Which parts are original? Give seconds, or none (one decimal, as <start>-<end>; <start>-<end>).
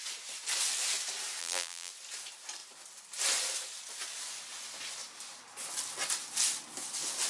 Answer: 0.0-1.4; 1.9-7.3